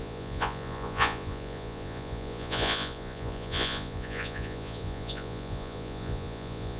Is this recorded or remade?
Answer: remade